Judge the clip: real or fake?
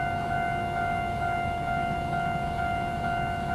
fake